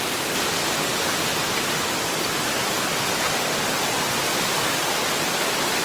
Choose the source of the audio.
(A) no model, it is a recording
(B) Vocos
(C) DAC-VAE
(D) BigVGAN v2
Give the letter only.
A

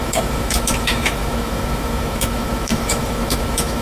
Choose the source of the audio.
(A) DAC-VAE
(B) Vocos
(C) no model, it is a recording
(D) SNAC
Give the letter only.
A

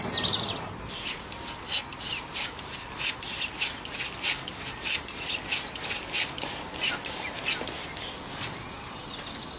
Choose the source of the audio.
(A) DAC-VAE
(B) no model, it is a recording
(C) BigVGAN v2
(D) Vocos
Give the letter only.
B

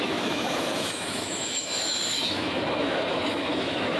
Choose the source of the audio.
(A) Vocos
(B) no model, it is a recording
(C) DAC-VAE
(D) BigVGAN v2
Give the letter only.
C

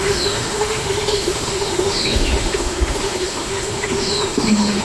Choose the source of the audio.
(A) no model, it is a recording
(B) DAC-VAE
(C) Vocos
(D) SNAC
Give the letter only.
B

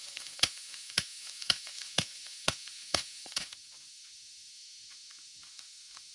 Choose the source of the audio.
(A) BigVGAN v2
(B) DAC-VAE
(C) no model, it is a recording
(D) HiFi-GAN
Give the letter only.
B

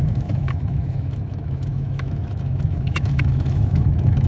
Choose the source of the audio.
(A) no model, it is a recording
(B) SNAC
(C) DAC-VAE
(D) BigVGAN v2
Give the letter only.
C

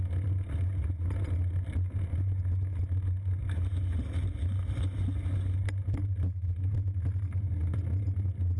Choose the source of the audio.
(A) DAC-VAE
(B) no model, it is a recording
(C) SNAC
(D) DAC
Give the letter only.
B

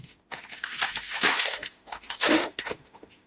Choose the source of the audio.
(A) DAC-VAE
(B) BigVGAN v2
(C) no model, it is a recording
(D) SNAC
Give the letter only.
A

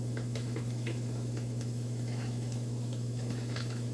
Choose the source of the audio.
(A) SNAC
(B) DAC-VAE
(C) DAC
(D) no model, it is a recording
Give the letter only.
B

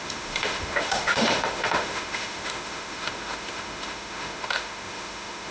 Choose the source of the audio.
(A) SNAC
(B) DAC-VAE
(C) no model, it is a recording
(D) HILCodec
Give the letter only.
B